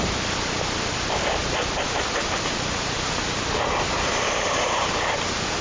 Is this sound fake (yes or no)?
no